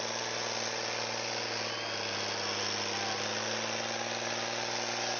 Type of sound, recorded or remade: recorded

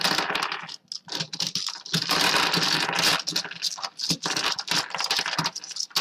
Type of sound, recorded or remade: recorded